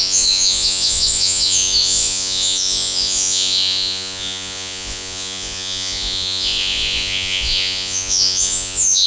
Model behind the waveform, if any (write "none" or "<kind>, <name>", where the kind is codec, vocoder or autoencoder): vocoder, Vocos